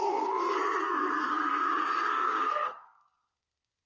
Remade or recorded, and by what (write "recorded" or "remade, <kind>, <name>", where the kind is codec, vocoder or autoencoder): remade, codec, SNAC